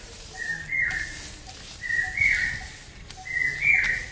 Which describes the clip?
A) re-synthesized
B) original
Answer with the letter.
B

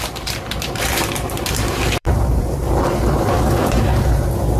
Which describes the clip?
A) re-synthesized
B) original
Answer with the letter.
A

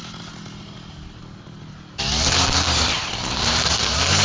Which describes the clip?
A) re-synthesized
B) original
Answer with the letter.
B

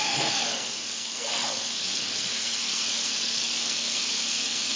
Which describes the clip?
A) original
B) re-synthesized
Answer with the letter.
B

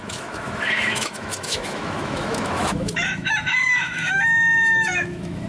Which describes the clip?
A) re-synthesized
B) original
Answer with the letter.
A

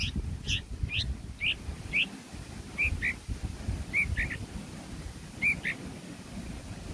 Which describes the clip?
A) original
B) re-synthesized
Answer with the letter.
A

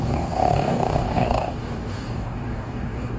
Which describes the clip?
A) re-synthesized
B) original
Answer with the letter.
A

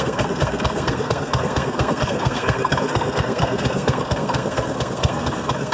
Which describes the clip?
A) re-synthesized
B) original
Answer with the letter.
A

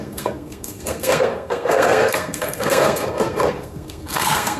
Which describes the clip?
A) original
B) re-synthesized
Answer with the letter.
B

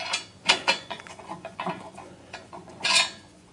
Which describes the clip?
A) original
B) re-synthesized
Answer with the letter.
B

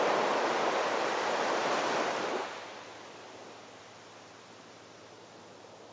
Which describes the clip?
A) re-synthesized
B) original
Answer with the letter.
B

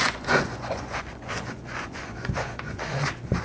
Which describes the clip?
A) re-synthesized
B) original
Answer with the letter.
A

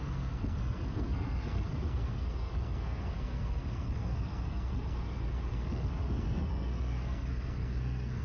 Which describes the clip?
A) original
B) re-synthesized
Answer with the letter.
B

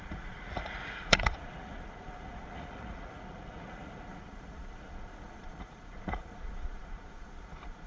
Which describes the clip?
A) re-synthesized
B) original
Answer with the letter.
A